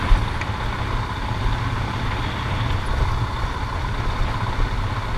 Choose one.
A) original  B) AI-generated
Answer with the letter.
A